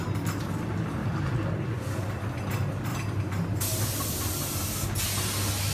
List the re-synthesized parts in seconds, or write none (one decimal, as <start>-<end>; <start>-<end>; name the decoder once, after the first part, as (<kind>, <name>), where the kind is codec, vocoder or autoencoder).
2.9-3.6 (vocoder, BigVGAN v2)